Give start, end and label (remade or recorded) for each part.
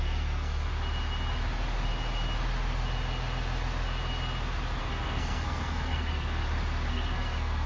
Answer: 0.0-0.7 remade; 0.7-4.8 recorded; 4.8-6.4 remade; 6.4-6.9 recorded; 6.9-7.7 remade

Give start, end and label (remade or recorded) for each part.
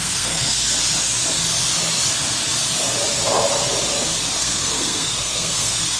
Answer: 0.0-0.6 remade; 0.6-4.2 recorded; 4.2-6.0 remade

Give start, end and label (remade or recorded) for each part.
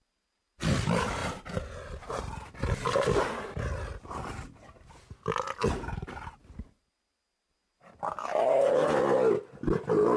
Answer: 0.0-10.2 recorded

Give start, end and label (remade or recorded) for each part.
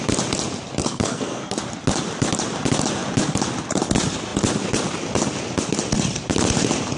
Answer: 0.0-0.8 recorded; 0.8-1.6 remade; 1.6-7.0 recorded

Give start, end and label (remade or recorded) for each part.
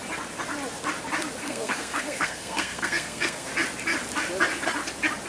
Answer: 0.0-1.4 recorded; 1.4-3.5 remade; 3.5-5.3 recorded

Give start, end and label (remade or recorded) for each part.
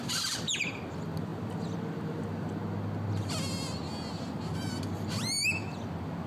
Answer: 0.0-6.3 recorded